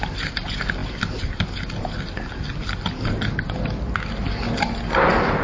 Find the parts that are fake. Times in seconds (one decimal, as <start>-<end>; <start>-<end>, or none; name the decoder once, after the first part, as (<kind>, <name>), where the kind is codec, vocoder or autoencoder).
none